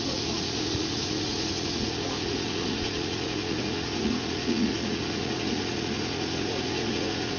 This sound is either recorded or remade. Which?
remade